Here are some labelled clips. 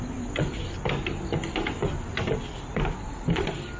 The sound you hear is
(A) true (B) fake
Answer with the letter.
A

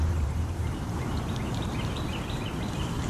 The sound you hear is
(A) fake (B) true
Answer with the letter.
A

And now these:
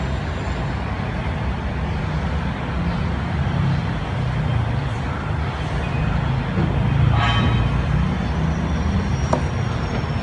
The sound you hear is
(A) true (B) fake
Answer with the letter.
A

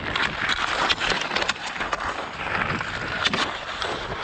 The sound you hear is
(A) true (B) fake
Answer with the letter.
B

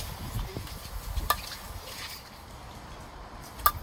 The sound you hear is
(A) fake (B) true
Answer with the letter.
B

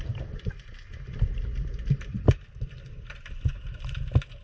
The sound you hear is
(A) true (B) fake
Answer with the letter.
A